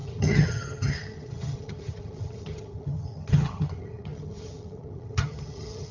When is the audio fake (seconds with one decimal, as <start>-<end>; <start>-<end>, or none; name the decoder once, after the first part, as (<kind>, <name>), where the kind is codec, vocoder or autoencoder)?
0.0-5.9 (vocoder, HiFi-GAN)